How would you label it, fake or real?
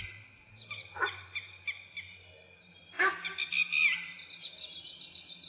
real